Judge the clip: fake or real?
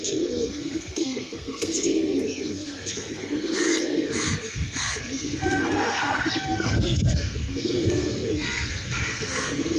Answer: fake